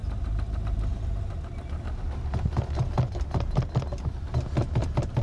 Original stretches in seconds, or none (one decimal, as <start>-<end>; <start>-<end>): 0.0-5.2